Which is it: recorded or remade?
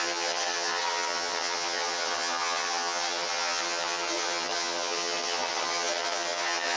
remade